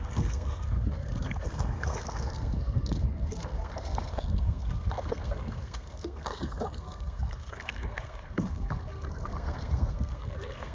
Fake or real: fake